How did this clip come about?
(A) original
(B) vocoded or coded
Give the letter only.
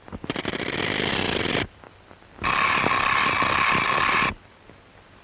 A